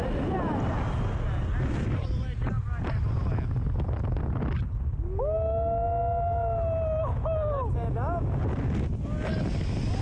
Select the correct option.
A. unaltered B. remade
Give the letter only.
A